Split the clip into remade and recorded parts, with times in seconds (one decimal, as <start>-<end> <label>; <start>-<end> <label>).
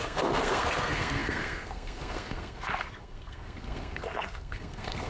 0.0-5.1 remade